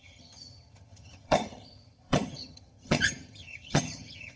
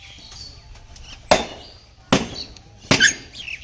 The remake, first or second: first